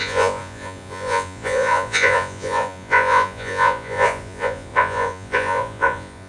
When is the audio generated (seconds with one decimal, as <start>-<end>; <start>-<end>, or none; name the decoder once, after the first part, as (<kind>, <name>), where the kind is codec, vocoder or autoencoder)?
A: 0.0-6.3 (vocoder, Vocos)